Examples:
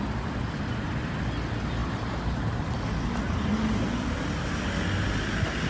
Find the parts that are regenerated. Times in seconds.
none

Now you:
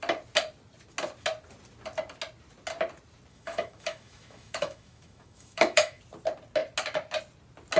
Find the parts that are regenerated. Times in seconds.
3.3-6.0

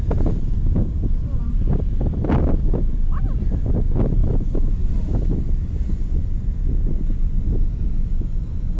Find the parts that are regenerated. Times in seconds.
none

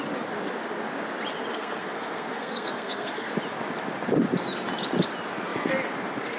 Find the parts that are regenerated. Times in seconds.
1.5-3.3

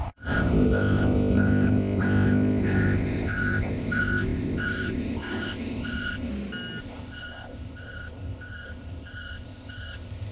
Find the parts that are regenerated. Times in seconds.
0.0-6.3; 6.8-10.3

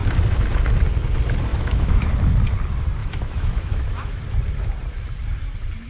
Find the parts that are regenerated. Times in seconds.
1.5-2.1; 3.0-4.2

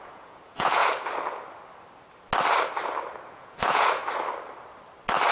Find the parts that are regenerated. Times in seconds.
0.0-0.8; 3.3-4.0

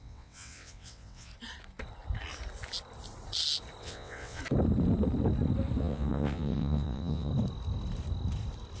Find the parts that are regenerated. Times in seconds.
0.0-1.3; 3.8-4.4; 5.8-7.3